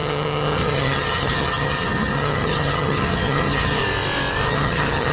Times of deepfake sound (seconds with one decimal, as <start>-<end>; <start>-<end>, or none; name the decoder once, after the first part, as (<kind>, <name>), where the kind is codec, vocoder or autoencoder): 0.0-3.8 (vocoder, HiFi-GAN); 4.5-5.1